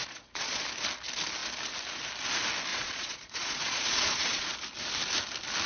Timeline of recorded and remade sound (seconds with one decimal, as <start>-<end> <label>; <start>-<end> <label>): 0.0-0.6 remade; 0.6-2.7 recorded; 2.7-4.4 remade; 4.4-5.7 recorded